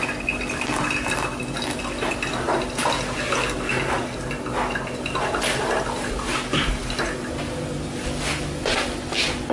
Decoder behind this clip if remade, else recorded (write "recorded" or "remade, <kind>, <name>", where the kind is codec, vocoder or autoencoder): recorded